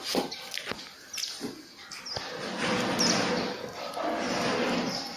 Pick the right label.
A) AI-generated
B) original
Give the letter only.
B